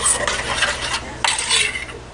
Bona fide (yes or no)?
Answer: yes